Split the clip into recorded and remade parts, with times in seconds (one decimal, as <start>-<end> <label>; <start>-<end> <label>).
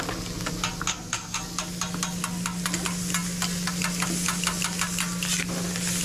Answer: 0.0-0.9 recorded; 0.9-1.4 remade; 1.4-6.0 recorded